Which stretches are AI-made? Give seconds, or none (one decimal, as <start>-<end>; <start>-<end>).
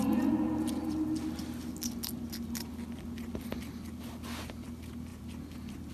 none